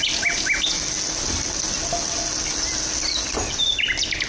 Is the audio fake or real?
real